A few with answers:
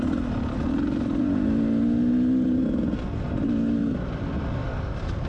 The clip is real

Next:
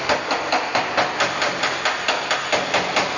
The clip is real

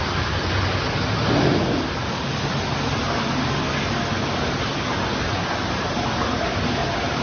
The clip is real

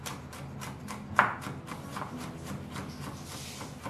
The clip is real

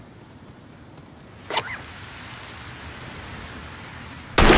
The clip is real